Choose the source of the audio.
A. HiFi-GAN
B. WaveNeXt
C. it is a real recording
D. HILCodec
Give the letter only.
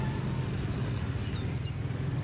C